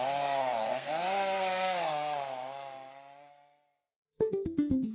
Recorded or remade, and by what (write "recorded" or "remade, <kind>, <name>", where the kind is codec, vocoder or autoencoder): remade, codec, SNAC